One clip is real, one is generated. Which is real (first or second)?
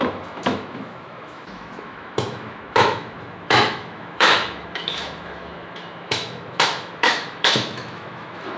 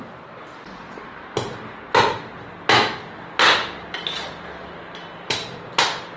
second